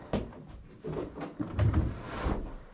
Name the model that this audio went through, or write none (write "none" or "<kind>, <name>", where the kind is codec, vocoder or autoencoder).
none